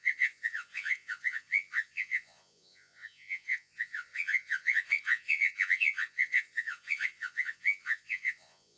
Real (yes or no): no